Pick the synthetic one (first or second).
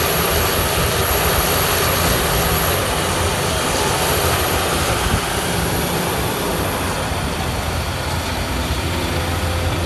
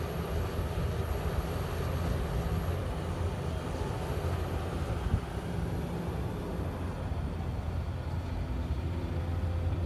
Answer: first